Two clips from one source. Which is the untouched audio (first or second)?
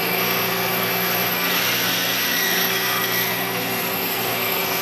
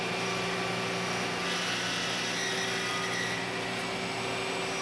second